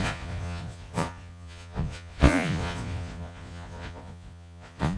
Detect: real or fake fake